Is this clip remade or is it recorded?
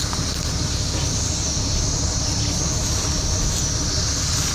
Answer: recorded